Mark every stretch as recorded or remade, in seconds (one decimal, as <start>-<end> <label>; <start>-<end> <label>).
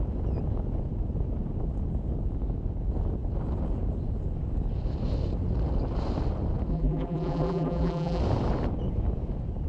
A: 0.0-6.7 recorded; 6.7-8.2 remade; 8.2-9.7 recorded